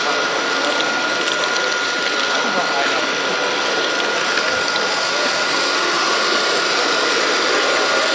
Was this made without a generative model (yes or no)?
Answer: yes